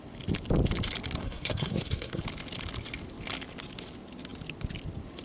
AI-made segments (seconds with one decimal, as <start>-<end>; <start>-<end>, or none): 1.2-2.2